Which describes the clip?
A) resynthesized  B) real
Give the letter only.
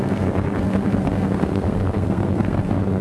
A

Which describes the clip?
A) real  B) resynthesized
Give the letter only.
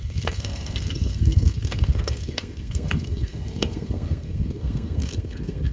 B